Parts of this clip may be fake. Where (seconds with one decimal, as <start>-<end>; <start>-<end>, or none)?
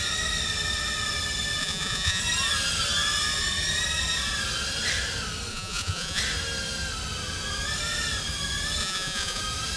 1.6-2.2; 5.5-6.2; 8.8-9.4